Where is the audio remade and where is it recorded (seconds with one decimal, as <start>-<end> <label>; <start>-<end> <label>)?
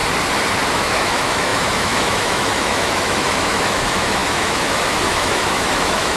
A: 0.0-0.7 recorded; 0.7-6.2 remade